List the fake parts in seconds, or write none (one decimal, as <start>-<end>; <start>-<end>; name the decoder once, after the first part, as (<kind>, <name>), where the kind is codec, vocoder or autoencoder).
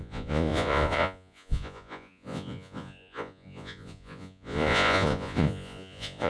0.0-6.3 (vocoder, Vocos)